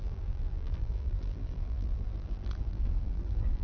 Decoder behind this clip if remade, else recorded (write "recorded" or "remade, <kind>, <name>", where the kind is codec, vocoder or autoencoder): remade, vocoder, BigVGAN v2